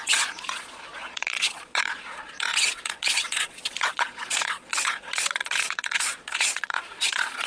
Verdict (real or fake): fake